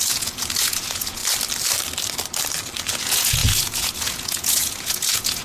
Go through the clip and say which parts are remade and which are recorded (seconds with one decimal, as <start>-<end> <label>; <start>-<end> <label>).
0.0-1.2 remade; 1.2-2.9 recorded; 2.9-5.4 remade